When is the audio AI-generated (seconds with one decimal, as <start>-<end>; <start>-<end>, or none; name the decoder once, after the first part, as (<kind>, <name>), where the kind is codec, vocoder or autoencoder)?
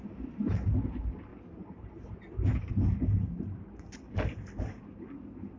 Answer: none